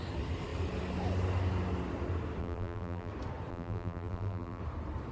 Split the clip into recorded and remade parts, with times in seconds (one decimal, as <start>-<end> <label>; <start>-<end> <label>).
0.0-2.4 recorded; 2.4-3.1 remade; 3.1-3.5 recorded; 3.5-4.6 remade; 4.6-5.1 recorded